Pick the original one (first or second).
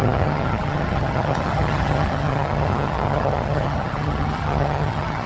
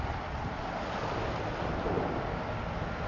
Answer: second